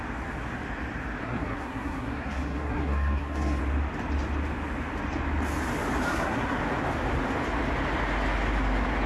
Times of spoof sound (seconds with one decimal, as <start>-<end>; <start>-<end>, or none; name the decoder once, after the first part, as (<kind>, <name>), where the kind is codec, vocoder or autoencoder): 1.2-3.6 (codec, SNAC); 6.1-6.6